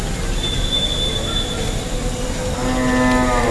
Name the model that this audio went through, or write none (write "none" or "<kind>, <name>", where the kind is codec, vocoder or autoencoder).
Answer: none